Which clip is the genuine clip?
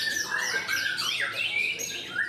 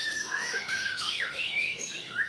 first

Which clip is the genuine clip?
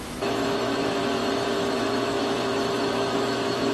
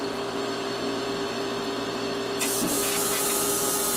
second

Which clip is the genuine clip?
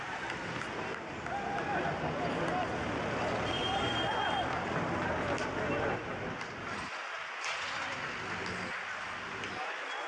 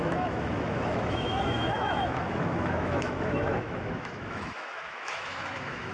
first